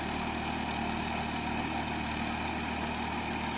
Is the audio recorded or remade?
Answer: recorded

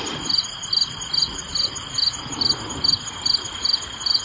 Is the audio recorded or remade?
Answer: recorded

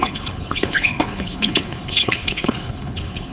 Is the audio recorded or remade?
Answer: remade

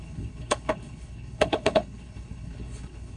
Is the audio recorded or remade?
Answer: remade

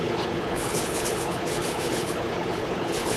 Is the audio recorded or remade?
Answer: remade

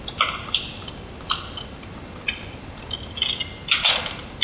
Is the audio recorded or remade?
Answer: recorded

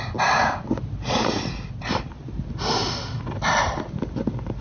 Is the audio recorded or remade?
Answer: recorded